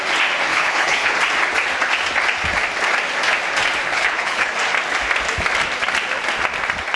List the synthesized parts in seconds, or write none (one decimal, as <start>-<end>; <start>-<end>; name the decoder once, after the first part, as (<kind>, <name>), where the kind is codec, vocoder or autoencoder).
0.5-1.1 (codec, HILCodec); 3.9-4.5